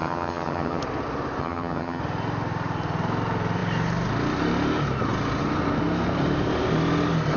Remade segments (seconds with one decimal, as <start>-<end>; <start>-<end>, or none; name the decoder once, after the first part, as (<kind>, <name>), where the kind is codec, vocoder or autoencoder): 0.0-0.8 (vocoder, HiFi-GAN); 1.4-2.0